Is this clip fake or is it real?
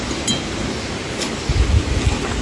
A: real